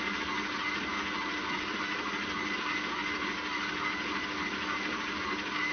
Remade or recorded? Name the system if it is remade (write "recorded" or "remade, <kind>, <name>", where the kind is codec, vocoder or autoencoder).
recorded